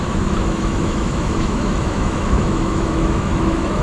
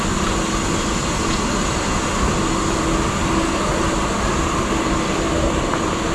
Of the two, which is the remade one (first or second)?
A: first